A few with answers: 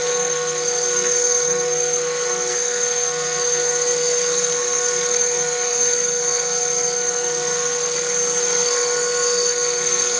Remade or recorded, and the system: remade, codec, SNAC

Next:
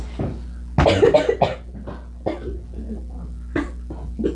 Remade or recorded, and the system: recorded